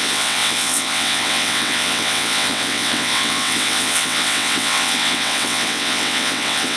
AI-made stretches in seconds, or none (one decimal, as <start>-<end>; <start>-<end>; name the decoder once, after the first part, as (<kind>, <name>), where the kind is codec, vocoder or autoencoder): 0.0-6.8 (vocoder, WaveNeXt)